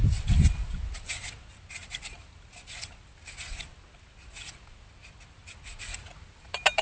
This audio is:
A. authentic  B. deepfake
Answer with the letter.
A